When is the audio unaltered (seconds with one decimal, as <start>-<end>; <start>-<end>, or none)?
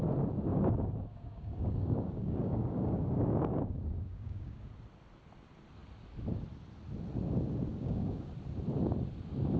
0.0-0.5; 4.7-7.7; 8.3-9.6